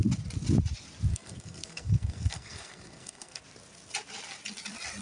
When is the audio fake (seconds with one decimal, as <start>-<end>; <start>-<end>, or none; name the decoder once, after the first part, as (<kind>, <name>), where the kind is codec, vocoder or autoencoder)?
1.1-3.4 (codec, SNAC)

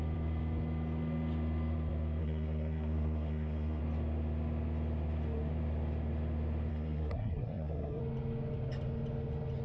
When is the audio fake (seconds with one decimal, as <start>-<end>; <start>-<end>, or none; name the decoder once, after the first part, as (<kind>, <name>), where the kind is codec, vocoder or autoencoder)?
2.2-3.8 (codec, SNAC); 6.7-8.0

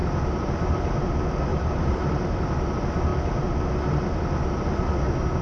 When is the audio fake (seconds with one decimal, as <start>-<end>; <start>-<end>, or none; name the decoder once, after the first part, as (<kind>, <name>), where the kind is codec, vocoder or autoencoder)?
0.0-0.8 (vocoder, BigVGAN v2); 1.5-2.5

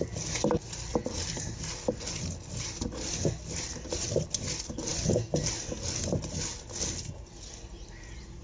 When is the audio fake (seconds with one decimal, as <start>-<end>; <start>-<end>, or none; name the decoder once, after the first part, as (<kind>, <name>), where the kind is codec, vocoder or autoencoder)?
none

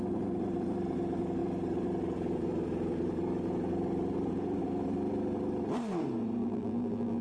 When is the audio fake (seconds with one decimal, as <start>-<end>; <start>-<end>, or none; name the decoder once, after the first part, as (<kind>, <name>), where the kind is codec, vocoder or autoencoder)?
6.4-7.2 (vocoder, BigVGAN v2)

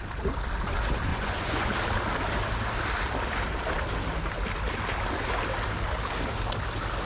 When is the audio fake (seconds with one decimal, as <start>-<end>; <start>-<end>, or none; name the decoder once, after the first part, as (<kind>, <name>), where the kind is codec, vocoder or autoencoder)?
1.1-1.7 (vocoder, Vocos)

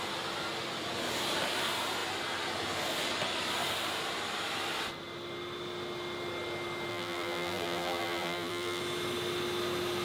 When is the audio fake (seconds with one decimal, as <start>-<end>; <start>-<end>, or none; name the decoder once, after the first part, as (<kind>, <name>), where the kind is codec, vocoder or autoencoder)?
6.9-8.8 (vocoder, BigVGAN v2)

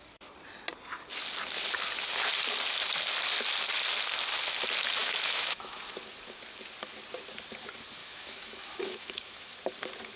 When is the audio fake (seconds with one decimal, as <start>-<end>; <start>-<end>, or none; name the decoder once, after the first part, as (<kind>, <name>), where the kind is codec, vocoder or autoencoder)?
5.0-5.9 (autoencoder, DAC-VAE); 8.0-9.6